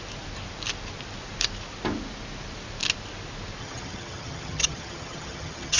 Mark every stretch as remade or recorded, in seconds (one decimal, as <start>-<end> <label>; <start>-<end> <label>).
0.0-3.6 recorded; 3.6-5.8 remade